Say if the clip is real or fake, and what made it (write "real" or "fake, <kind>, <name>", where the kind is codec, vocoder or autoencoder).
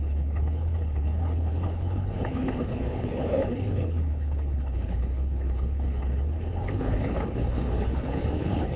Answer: fake, codec, HILCodec